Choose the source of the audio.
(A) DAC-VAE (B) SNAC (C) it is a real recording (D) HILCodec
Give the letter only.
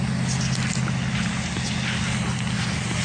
C